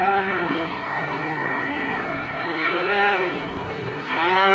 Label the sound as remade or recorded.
remade